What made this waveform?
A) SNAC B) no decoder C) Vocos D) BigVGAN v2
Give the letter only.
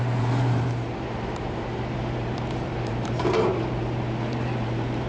D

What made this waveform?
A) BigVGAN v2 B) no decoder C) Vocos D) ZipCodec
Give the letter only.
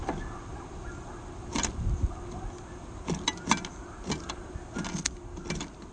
B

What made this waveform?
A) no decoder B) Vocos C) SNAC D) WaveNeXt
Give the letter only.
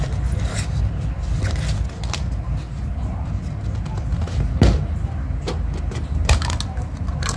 A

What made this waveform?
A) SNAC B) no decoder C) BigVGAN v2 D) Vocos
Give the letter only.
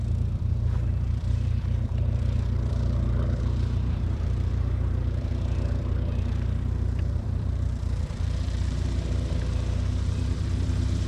C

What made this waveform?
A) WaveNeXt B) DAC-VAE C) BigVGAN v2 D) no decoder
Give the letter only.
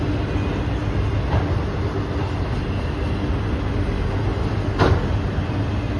D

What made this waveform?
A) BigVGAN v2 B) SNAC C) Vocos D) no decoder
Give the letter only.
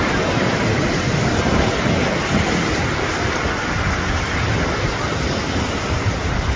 D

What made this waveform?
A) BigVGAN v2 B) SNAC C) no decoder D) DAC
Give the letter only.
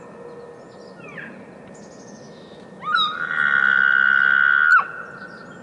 C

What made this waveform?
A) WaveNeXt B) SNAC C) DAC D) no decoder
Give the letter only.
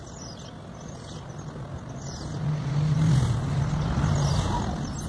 D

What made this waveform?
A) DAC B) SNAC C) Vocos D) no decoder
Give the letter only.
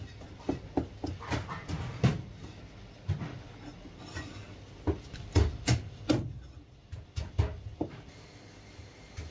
D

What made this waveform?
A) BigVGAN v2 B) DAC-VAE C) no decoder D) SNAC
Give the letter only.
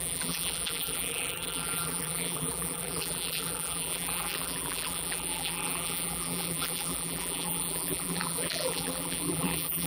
A